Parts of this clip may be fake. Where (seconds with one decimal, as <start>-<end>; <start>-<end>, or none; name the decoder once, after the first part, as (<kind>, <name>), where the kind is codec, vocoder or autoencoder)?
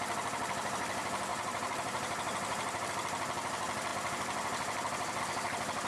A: 1.3-2.9 (vocoder, BigVGAN v2)